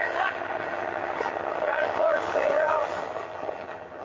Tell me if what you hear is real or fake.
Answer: fake